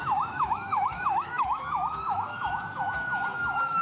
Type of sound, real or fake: fake